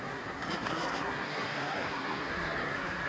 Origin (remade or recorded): remade